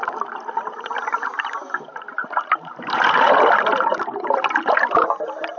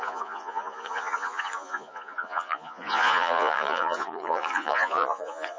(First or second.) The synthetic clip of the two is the second